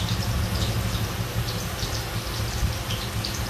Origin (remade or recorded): recorded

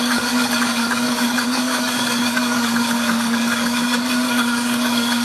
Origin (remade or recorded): remade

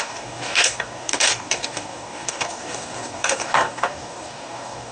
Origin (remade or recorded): remade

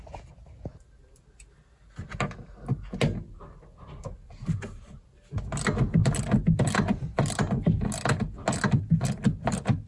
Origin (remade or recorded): recorded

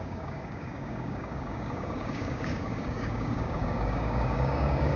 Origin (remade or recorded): remade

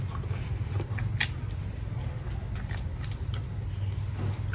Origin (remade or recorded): recorded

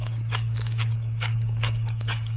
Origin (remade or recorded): remade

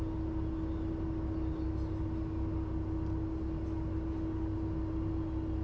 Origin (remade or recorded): recorded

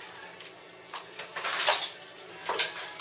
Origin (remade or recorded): recorded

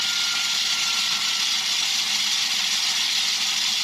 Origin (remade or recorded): recorded